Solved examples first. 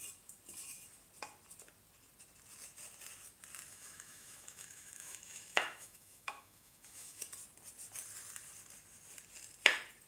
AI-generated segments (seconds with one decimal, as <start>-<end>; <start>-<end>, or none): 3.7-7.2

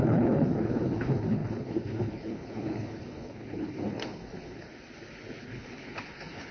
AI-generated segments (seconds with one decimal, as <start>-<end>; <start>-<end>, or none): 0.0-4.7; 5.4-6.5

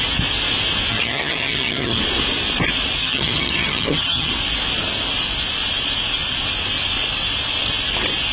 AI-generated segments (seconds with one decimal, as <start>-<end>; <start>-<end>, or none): 0.9-2.0; 3.0-4.3

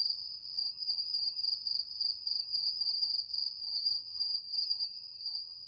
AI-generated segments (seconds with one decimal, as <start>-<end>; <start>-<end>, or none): 0.6-1.4; 2.4-3.1; 3.6-5.7

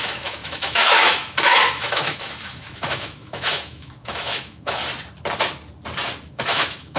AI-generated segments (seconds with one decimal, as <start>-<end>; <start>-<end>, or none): 0.0-4.8; 6.3-7.0